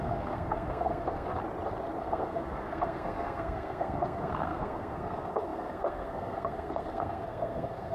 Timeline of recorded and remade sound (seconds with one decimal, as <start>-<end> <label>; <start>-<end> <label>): 0.0-1.4 remade; 1.4-2.0 recorded; 2.0-7.9 remade